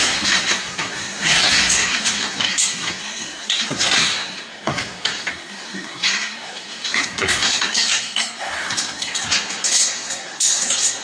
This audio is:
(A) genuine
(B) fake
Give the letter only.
B